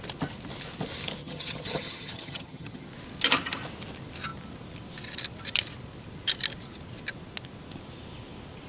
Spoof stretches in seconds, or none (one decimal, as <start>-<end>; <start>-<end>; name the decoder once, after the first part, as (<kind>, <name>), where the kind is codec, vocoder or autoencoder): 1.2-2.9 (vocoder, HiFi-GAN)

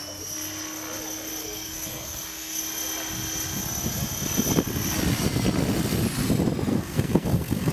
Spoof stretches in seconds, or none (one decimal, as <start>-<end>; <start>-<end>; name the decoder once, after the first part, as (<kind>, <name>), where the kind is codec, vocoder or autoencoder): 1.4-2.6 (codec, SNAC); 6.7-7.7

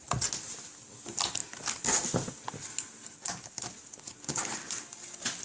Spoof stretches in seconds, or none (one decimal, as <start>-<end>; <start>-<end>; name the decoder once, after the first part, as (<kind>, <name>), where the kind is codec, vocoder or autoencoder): none